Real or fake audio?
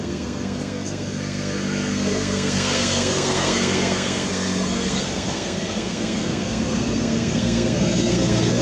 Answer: fake